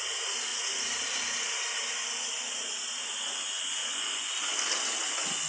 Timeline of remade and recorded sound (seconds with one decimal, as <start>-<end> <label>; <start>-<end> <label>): 0.0-3.8 recorded; 3.8-4.3 remade; 4.3-5.5 recorded